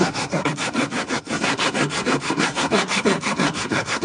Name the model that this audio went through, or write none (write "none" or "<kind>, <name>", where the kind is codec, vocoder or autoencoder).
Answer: codec, SNAC